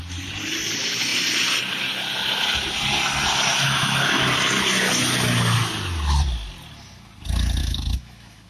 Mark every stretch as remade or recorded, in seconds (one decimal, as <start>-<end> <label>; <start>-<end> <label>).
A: 0.0-3.5 recorded; 3.5-4.2 remade; 4.2-7.6 recorded; 7.6-8.5 remade